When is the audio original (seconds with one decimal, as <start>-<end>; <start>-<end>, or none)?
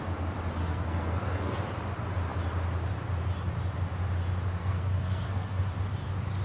0.0-0.6; 1.6-4.6; 5.6-6.4